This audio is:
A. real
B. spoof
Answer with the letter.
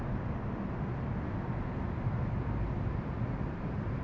A